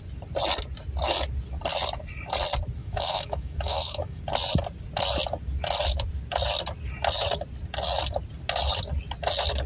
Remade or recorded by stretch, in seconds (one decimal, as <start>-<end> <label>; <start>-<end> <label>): 0.0-2.8 recorded; 2.8-4.2 remade; 4.2-9.7 recorded